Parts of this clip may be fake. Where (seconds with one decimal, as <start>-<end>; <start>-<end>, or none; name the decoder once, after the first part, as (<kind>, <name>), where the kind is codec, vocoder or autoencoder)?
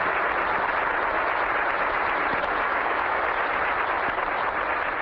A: 2.7-3.2 (codec, DAC)